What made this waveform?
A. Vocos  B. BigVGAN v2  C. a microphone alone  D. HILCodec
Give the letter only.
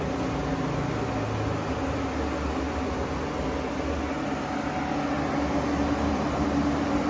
C